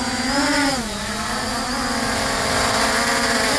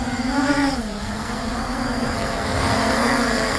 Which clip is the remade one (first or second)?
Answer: second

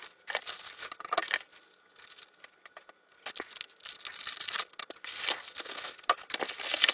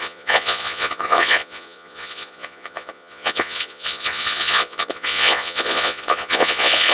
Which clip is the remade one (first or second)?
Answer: second